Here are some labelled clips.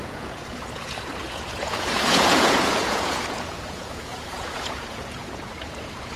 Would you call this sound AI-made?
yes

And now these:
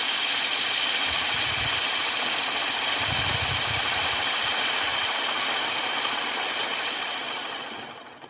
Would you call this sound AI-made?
no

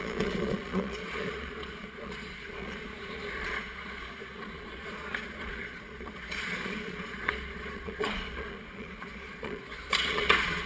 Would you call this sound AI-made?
yes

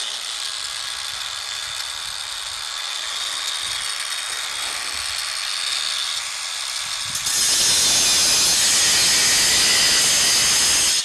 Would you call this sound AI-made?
no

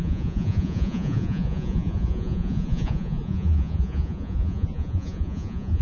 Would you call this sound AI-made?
yes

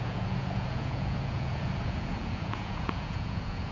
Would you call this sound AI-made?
yes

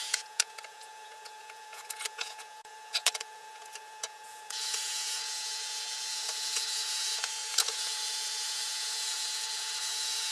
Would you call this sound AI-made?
yes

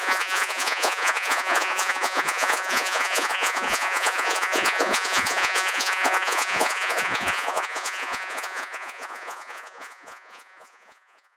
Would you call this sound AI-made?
yes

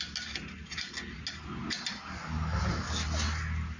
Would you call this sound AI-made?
no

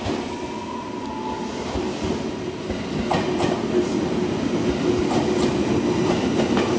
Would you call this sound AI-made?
no